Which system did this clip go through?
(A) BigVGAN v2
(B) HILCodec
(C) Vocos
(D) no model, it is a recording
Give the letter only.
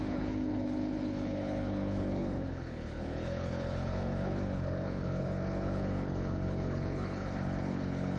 B